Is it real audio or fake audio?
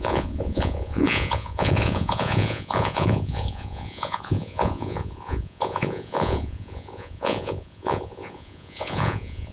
fake